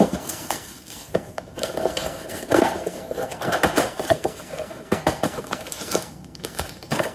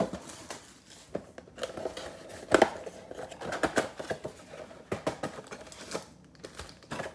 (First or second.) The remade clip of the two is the first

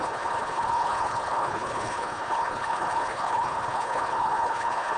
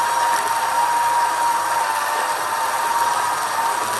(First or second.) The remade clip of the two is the first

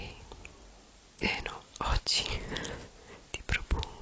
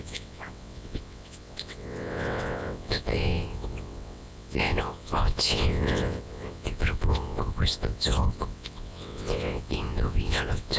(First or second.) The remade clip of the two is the second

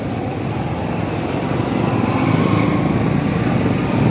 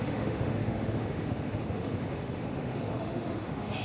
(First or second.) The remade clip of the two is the second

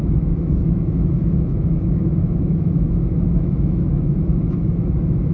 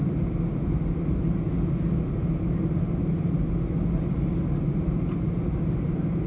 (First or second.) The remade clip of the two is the first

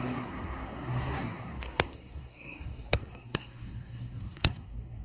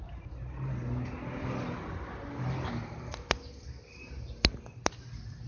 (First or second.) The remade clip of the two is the first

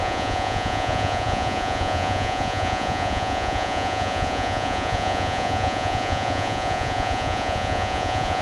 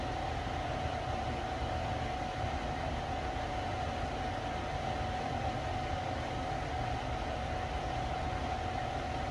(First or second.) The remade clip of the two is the first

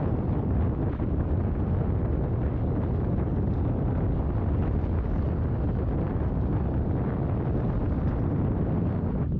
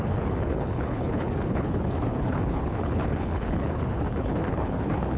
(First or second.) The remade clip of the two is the second